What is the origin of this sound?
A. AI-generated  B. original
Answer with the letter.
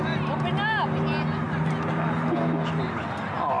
B